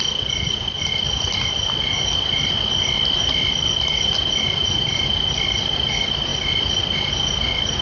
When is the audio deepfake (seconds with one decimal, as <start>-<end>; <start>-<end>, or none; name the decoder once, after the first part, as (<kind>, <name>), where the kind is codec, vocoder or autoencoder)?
none